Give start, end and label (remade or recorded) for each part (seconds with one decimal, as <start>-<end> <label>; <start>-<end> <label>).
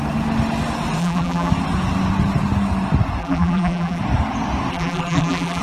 0.0-1.0 recorded; 1.0-1.5 remade; 1.5-3.2 recorded; 3.2-4.0 remade; 4.0-4.7 recorded; 4.7-5.6 remade